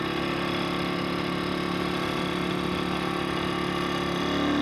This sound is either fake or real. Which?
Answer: real